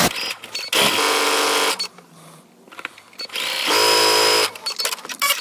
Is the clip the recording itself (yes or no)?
yes